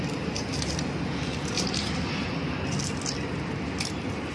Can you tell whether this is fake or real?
real